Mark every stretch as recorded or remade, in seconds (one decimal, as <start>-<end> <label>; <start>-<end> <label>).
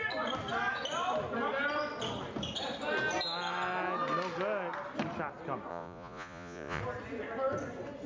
0.0-5.7 recorded; 5.7-6.8 remade; 6.8-8.1 recorded